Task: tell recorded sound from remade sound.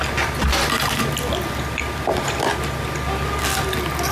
recorded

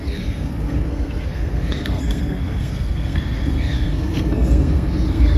remade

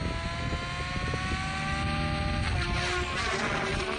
recorded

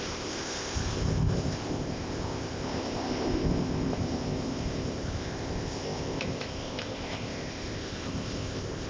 remade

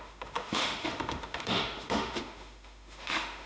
remade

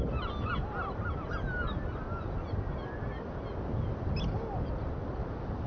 recorded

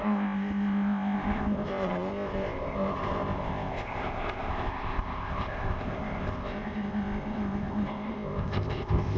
remade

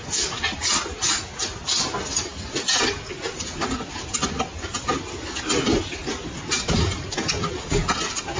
recorded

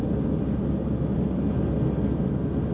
recorded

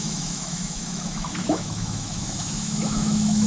remade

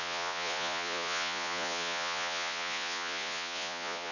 remade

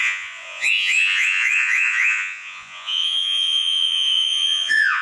remade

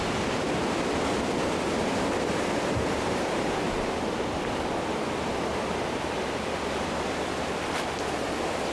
remade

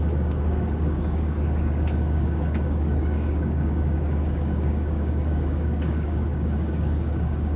remade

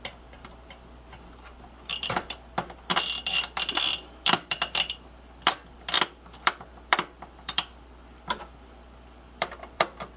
remade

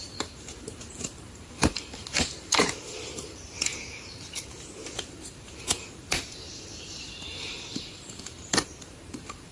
remade